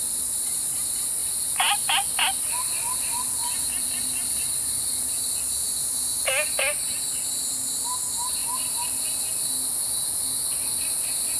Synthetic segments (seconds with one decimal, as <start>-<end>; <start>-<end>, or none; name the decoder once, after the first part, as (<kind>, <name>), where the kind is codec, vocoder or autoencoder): 1.2-5.1 (vocoder, BigVGAN v2); 8.4-9.2